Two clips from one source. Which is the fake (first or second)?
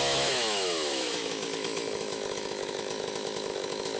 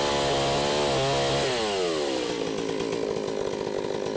first